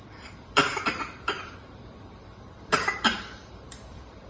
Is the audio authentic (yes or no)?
no